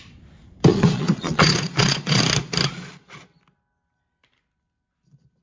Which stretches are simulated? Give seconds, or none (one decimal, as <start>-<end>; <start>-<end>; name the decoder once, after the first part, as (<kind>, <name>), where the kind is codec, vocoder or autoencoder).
0.7-2.2 (vocoder, Vocos)